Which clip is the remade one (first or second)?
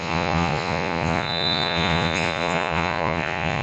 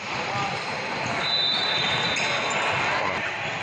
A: first